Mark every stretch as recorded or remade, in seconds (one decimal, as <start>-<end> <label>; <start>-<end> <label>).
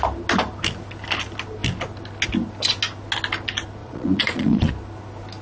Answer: 0.0-3.8 recorded; 3.8-4.7 remade; 4.7-5.4 recorded